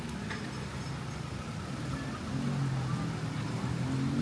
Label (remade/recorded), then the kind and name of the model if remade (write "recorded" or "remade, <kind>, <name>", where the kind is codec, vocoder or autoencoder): recorded